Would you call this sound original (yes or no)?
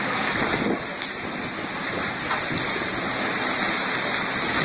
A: yes